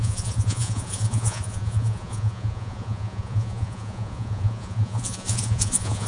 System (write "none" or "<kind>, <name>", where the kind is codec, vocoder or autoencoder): vocoder, Vocos